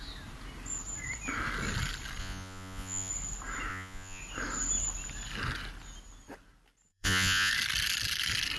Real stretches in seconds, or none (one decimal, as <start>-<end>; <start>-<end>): 0.0-2.2; 3.1-3.7; 4.2-6.9; 7.5-8.6